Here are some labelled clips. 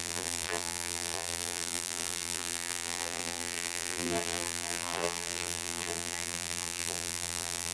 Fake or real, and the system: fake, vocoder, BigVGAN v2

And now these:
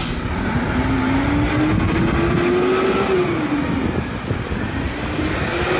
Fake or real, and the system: real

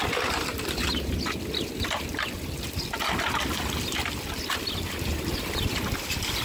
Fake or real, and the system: real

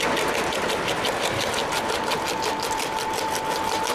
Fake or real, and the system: real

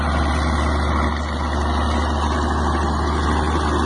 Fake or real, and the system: real